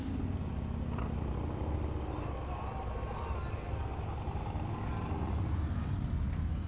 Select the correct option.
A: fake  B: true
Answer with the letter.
B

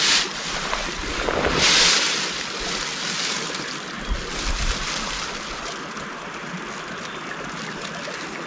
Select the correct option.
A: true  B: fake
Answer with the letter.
A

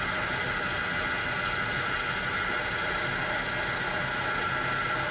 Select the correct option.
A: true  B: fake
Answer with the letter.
A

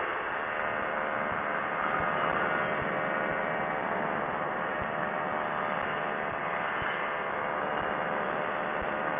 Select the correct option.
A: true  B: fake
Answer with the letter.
A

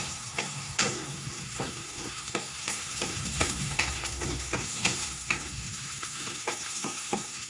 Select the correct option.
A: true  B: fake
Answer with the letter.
B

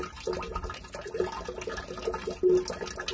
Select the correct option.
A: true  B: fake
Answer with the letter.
A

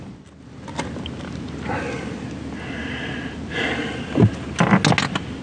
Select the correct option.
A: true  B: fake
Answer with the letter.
A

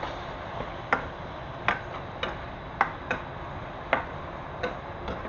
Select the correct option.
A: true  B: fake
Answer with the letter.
A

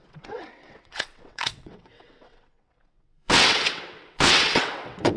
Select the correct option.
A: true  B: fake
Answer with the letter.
B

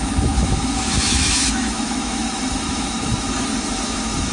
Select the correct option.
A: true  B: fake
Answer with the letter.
B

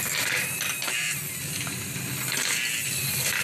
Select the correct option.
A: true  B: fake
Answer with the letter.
A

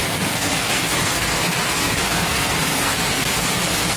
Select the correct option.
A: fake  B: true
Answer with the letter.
A